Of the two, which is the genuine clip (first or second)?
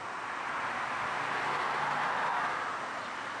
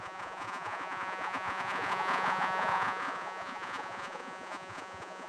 first